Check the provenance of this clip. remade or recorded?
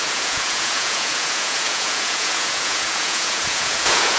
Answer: remade